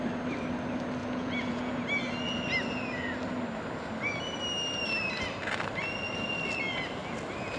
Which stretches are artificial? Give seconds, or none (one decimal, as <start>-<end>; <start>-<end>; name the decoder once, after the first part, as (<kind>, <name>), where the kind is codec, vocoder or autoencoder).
1.0-1.8 (vocoder, Vocos)